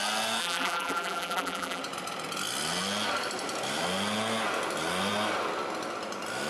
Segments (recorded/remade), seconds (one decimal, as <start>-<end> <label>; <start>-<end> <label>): 0.0-0.4 recorded; 0.4-1.8 remade; 1.8-6.5 recorded

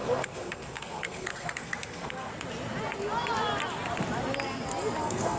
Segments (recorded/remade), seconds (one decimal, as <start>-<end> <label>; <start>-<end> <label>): 0.0-2.3 remade; 2.3-5.0 recorded; 5.0-5.4 remade

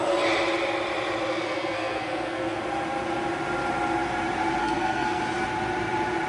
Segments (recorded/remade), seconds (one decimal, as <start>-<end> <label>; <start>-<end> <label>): 0.0-1.3 recorded; 1.3-2.6 remade; 2.6-4.6 recorded; 4.6-5.2 remade; 5.2-6.3 recorded

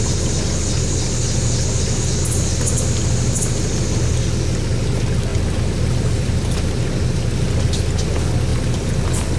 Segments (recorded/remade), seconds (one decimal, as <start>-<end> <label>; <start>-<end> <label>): 0.0-5.3 recorded; 5.3-6.8 remade; 6.8-8.5 recorded; 8.5-9.4 remade

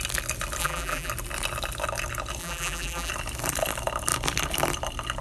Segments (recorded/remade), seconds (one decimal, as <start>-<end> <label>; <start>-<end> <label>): 0.0-0.6 recorded; 0.6-1.1 remade; 1.1-2.4 recorded; 2.4-3.1 remade; 3.1-5.2 recorded